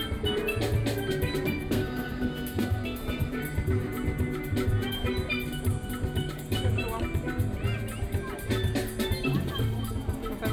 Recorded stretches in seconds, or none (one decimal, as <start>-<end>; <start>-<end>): 0.0-1.6; 3.4-10.5

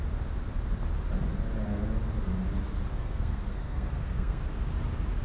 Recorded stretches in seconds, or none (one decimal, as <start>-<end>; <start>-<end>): 0.0-2.9; 4.4-5.2